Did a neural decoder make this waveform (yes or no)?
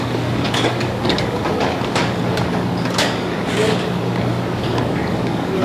yes